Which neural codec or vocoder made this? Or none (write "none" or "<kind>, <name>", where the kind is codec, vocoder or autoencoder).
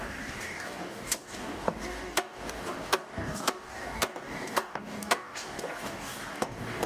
codec, DAC